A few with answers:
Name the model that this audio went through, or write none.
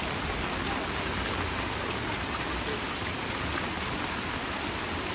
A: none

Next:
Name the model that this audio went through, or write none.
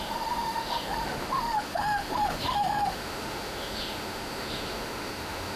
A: autoencoder, DAC-VAE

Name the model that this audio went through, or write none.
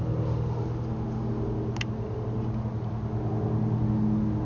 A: none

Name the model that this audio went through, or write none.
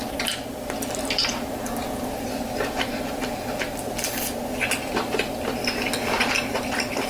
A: none